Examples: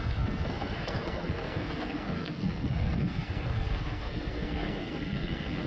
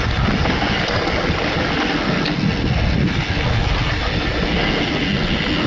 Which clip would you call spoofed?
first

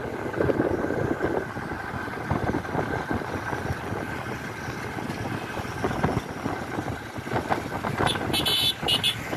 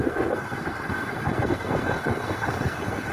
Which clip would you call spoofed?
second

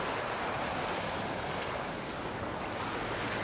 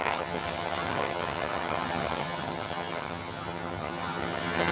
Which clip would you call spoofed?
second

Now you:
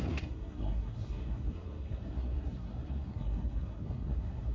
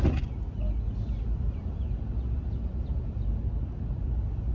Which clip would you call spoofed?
first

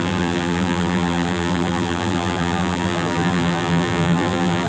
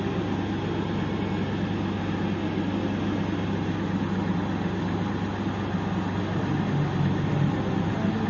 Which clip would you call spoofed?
first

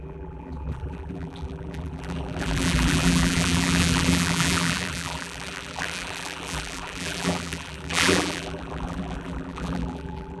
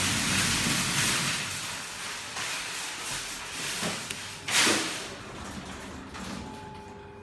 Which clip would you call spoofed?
first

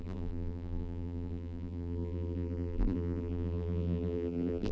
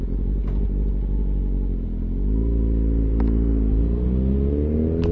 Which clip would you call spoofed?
first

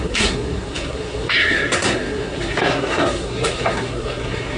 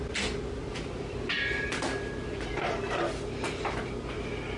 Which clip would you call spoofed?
first